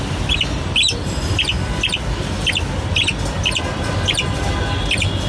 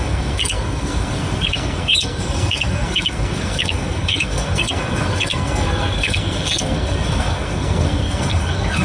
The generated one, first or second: second